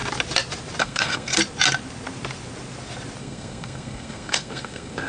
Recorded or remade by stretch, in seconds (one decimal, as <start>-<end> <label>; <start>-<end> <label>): 0.0-0.8 recorded; 0.8-1.3 remade; 1.3-3.2 recorded; 3.2-5.1 remade

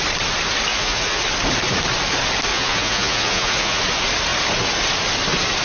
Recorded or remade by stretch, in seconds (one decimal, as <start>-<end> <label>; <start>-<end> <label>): 0.0-0.7 recorded; 0.7-1.2 remade; 1.2-2.5 recorded; 2.5-3.8 remade; 3.8-5.6 recorded

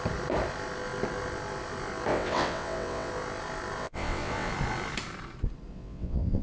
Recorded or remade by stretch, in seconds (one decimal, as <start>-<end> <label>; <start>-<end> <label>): 0.0-2.1 recorded; 2.1-3.1 remade; 3.1-3.8 recorded; 3.8-4.5 remade; 4.5-5.7 recorded; 5.7-6.4 remade

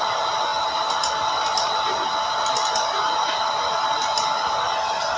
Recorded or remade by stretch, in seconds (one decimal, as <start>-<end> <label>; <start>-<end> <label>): 0.0-5.2 recorded